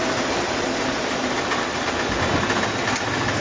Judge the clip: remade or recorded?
recorded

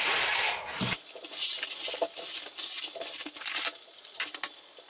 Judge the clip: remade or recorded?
recorded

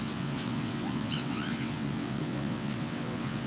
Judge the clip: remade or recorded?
remade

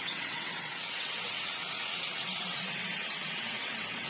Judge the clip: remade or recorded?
remade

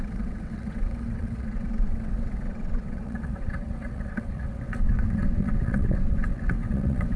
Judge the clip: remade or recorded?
remade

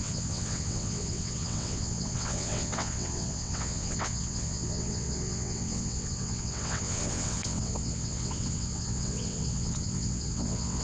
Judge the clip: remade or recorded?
remade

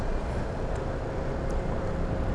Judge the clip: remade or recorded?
recorded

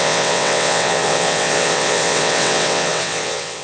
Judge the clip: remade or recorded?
remade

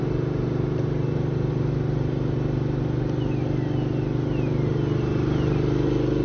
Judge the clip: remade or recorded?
recorded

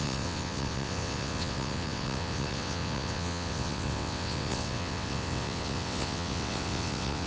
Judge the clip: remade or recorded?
remade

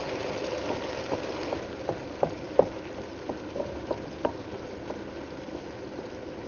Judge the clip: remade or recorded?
recorded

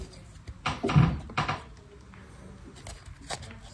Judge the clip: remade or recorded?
recorded